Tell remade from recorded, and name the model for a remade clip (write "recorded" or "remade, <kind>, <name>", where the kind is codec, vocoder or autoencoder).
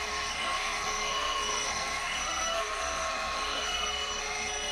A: remade, codec, SNAC